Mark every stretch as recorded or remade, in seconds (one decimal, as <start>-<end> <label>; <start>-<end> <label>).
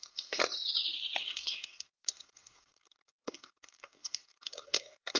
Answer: 0.0-0.4 remade; 0.4-1.2 recorded; 1.2-5.2 remade